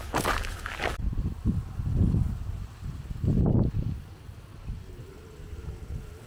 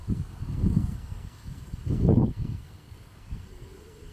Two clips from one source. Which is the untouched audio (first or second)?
first